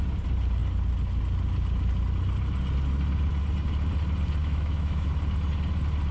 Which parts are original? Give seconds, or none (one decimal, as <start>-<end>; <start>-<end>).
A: 0.0-4.4; 5.1-6.1